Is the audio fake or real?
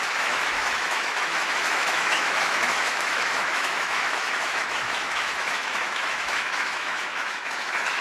fake